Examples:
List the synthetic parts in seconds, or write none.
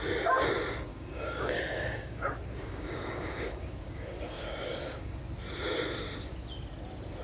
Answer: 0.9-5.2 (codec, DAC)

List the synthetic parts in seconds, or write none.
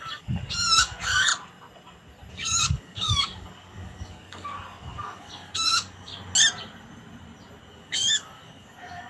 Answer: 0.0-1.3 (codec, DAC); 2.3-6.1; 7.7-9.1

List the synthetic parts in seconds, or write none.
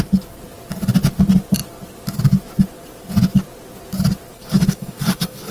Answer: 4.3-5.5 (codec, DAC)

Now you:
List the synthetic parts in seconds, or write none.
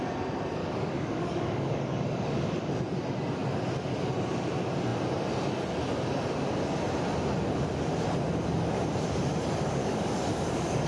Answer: 0.6-2.7 (codec, DAC); 9.8-10.9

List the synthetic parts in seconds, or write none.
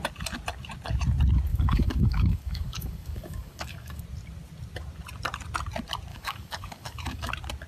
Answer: 1.5-4.0 (codec, DAC); 6.1-7.3